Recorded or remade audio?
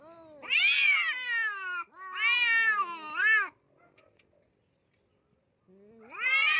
recorded